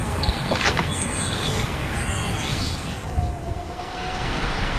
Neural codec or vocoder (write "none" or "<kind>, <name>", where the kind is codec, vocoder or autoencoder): codec, SNAC